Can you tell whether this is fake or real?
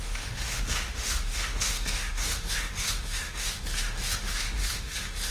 fake